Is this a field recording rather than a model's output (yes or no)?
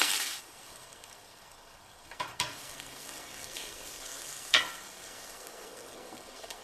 no